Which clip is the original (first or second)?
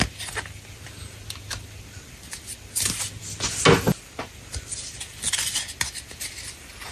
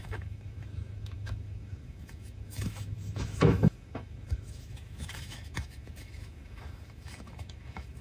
first